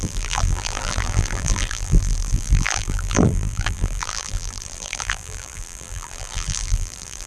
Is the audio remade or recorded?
remade